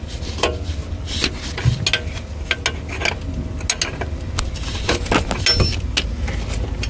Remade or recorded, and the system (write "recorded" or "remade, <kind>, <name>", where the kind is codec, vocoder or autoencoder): recorded